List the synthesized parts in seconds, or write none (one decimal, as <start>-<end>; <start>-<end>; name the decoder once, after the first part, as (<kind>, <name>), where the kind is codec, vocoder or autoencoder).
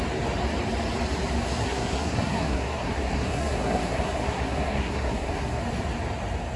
1.6-5.6 (codec, SNAC)